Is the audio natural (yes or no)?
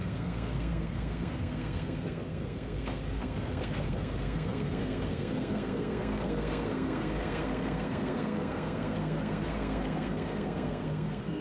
no